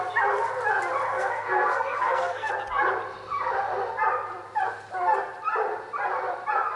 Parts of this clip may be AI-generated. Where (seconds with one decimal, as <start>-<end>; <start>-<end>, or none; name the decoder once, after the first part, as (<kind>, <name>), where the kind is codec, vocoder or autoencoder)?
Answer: 1.1-2.5 (codec, SNAC)